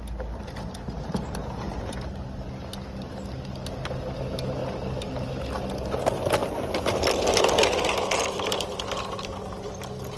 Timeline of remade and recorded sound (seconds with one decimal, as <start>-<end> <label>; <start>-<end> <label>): 0.0-1.4 recorded; 1.4-2.1 remade; 2.1-10.2 recorded